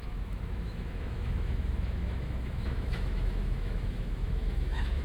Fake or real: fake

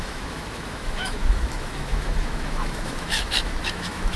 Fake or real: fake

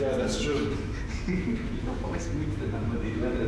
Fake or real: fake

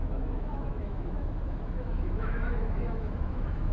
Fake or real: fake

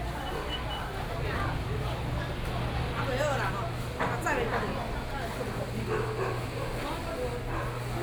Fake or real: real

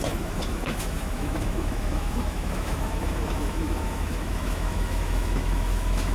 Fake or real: fake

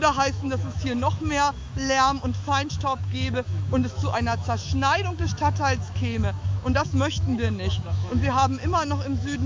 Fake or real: fake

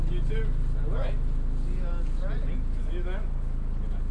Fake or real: real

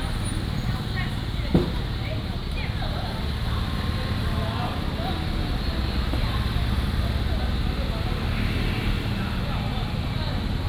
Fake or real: real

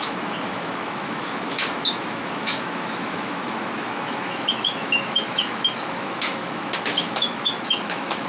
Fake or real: fake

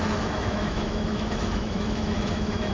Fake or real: fake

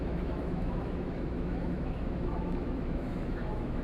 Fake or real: fake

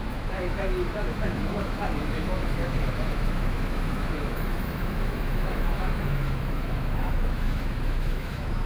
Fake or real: fake